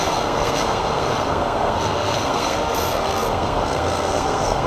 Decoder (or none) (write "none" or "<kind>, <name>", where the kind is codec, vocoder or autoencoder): codec, SNAC